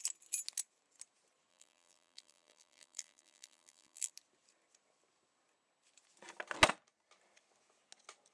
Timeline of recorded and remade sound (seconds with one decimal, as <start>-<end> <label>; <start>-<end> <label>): 0.0-1.5 recorded; 1.5-4.1 remade; 4.1-8.3 recorded